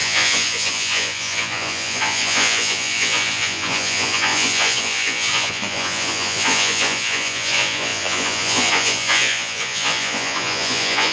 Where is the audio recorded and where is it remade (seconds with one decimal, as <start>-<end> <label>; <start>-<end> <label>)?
0.0-11.1 remade